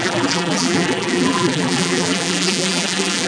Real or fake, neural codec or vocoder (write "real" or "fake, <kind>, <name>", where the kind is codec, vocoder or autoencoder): fake, vocoder, BigVGAN v2